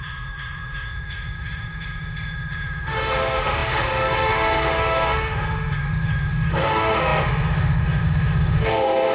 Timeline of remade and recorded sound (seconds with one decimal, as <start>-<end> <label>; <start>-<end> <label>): 0.0-9.1 remade